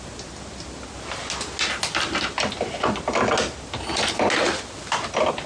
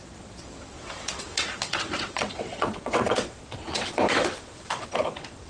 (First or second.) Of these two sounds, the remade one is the second